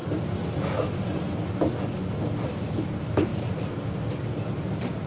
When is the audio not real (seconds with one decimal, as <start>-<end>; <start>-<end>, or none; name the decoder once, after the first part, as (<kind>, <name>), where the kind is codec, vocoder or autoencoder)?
none